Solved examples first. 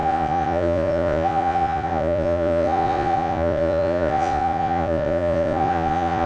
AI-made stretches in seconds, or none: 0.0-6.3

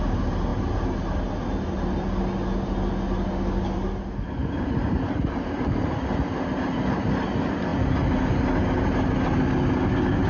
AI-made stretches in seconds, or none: none

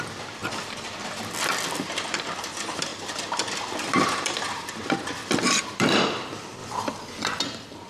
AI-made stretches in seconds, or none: 0.0-0.4; 1.4-6.6; 7.4-7.9